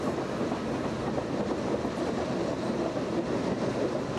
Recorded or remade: recorded